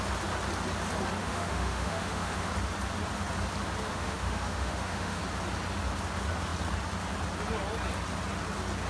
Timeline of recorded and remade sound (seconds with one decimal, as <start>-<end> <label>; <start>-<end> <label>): 0.0-1.2 recorded; 1.2-2.5 remade; 2.5-3.9 recorded; 3.9-5.2 remade; 5.2-8.9 recorded